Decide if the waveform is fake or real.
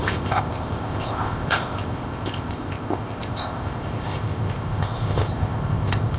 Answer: fake